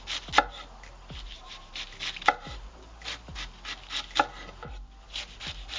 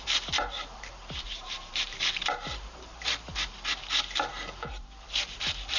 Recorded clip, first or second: first